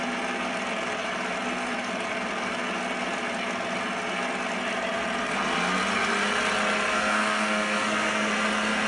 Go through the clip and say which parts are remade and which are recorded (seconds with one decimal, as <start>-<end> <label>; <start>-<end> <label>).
0.0-6.9 recorded; 6.9-8.3 remade; 8.3-8.9 recorded